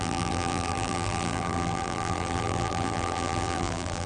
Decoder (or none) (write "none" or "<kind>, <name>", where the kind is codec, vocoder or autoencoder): vocoder, BigVGAN v2